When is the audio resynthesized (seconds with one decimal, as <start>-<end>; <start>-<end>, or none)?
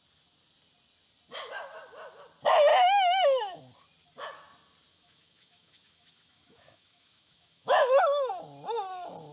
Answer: 2.7-3.6; 4.9-8.3